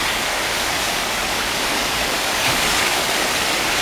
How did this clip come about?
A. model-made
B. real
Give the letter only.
A